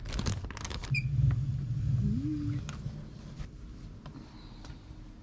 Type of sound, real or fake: real